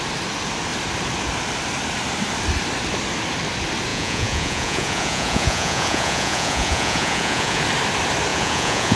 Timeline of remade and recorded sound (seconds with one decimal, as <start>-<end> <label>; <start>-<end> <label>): 0.0-3.9 recorded; 3.9-7.6 remade; 7.6-8.3 recorded; 8.3-9.0 remade